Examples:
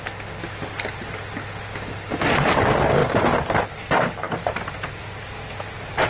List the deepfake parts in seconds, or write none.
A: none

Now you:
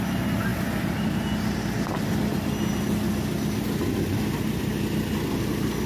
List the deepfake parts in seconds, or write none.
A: none